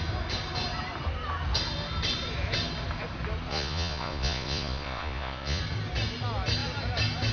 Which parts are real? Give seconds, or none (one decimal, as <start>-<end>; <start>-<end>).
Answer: 0.0-3.5; 5.6-7.3